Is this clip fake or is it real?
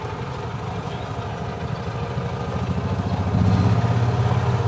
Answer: real